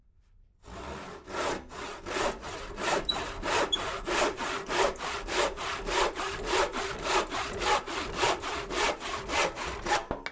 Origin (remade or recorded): recorded